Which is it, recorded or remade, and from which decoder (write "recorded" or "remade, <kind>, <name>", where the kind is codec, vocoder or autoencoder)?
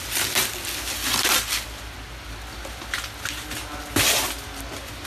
recorded